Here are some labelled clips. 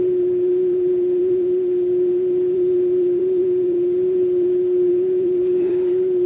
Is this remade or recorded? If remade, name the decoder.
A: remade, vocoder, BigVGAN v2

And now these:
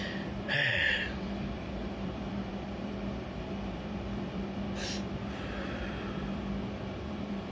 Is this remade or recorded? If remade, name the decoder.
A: remade, vocoder, BigVGAN v2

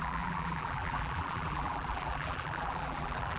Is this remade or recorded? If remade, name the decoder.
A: remade, vocoder, BigVGAN v2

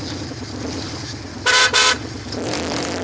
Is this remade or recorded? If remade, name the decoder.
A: remade, vocoder, BigVGAN v2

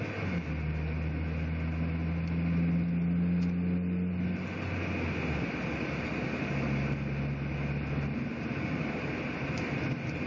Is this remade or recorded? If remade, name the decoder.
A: recorded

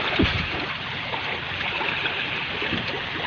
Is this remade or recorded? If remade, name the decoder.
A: remade, vocoder, BigVGAN v2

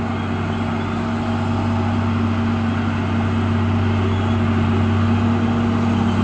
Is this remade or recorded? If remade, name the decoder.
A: recorded